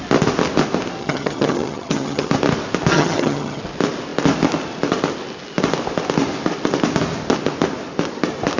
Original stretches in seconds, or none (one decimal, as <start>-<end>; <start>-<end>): 0.0-1.0; 2.3-2.9; 3.6-8.6